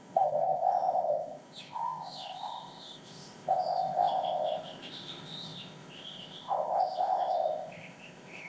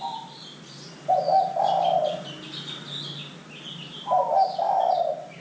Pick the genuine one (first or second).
second